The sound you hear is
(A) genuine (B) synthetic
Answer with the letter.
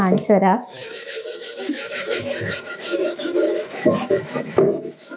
B